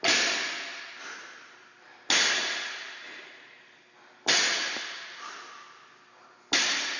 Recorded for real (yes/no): yes